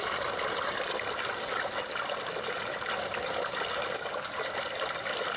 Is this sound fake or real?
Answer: real